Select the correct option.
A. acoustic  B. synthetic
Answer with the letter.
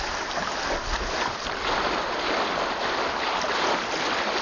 A